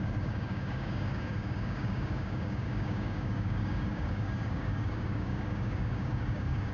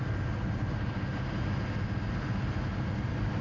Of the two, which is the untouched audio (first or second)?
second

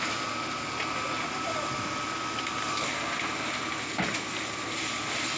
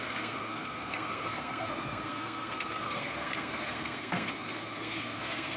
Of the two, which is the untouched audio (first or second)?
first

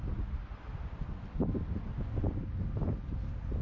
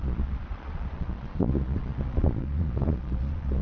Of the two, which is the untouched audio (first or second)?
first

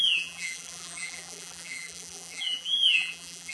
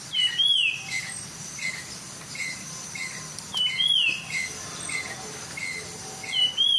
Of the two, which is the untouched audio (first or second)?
second